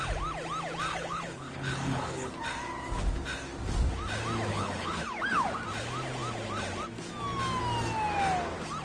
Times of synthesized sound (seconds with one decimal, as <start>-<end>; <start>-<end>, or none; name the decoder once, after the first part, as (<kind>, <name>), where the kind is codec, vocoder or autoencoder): 0.9-2.3 (codec, HILCodec); 4.5-5.0